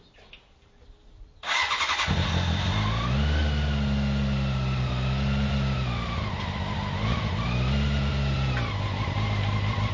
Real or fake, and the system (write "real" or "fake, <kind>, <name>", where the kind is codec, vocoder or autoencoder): real